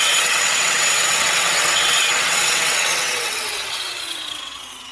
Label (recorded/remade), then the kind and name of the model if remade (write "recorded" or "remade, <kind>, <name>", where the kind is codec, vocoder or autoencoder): remade, vocoder, WaveNeXt